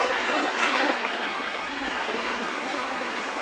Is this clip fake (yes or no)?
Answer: yes